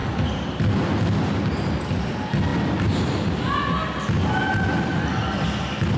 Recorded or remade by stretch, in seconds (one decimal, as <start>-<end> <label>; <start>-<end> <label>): 0.0-1.0 remade; 1.0-6.0 recorded